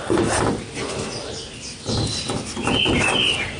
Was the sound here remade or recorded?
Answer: recorded